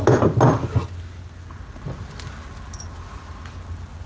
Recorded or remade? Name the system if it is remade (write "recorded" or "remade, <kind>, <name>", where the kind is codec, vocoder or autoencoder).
recorded